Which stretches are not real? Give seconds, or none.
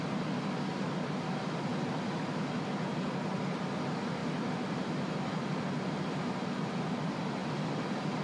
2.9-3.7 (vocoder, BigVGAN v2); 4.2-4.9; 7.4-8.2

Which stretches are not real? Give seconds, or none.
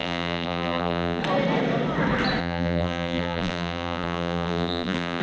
0.0-1.2 (vocoder, BigVGAN v2); 2.4-5.2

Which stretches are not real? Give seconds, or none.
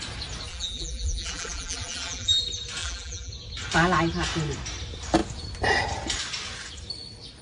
0.5-2.4 (vocoder, BigVGAN v2); 2.8-3.3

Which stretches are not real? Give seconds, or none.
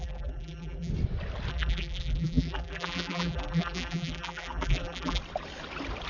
0.0-0.9 (vocoder, BigVGAN v2); 1.5-5.2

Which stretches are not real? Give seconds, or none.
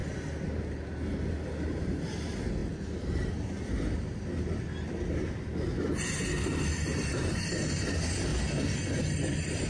none